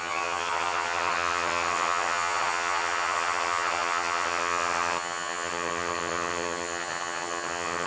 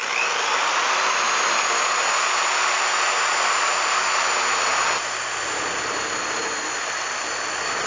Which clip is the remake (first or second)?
first